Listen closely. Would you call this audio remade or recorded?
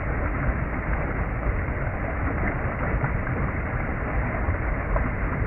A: recorded